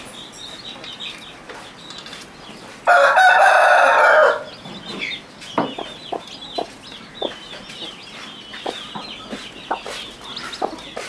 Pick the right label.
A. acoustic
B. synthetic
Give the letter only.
A